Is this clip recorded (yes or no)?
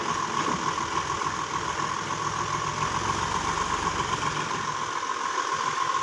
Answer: yes